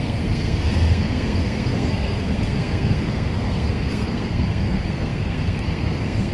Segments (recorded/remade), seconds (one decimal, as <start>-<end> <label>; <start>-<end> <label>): 0.0-6.3 remade